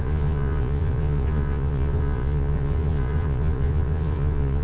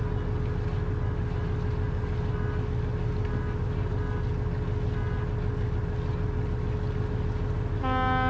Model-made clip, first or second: first